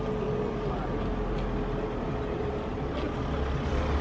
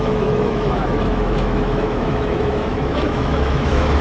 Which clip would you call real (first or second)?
first